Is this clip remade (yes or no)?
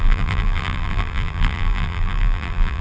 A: yes